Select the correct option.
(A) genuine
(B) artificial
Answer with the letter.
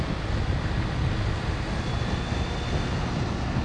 A